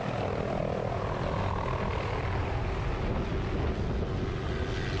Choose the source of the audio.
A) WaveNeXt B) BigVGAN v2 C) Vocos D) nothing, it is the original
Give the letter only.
D